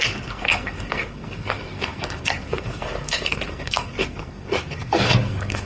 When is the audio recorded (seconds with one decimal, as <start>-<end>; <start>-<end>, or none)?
none